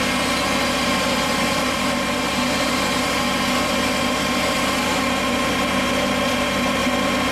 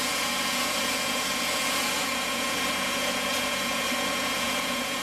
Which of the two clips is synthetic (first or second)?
second